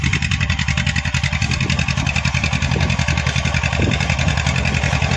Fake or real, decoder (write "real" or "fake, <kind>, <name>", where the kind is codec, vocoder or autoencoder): real